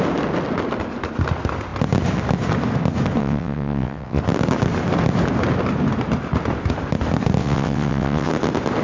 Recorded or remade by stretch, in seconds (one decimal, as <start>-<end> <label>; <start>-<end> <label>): 0.0-3.2 recorded; 3.2-4.2 remade; 4.2-7.4 recorded; 7.4-8.3 remade; 8.3-8.8 recorded

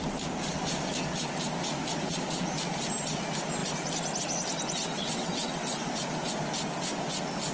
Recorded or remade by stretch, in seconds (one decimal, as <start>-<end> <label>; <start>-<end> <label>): 0.0-4.8 recorded; 4.8-5.9 remade; 5.9-7.5 recorded

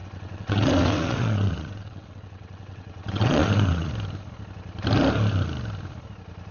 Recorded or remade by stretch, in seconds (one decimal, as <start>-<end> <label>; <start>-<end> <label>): 0.0-3.9 remade; 3.9-6.5 recorded

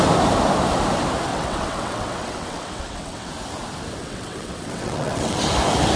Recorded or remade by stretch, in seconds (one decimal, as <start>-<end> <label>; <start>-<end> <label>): 0.0-1.3 recorded; 1.3-3.3 remade; 3.3-4.0 recorded; 4.0-5.4 remade; 5.4-6.0 recorded

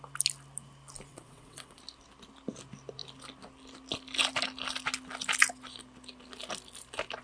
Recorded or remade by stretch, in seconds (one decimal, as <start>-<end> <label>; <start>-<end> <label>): 0.0-1.1 recorded; 1.1-1.8 remade; 1.8-7.2 recorded

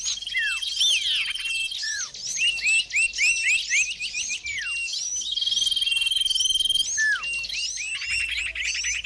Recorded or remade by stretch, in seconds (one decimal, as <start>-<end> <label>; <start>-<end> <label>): 0.0-9.1 recorded

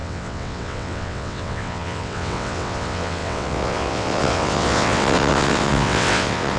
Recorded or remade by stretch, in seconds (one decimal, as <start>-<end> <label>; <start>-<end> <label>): 0.0-6.6 remade

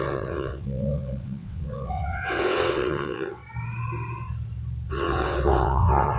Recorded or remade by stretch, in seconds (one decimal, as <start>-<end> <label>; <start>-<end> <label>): 0.0-3.4 remade; 3.4-4.9 recorded; 4.9-6.2 remade